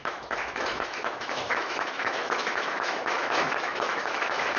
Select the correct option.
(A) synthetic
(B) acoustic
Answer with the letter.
A